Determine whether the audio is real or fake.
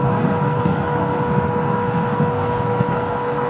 fake